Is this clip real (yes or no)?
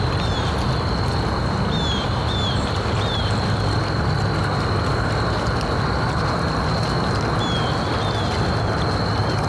yes